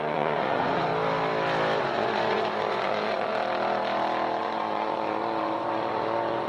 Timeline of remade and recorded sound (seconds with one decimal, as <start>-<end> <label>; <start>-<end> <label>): 0.0-0.9 remade; 0.9-1.8 recorded; 1.8-3.3 remade; 3.3-4.4 recorded; 4.4-6.5 remade